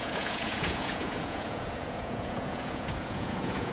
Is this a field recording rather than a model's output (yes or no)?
no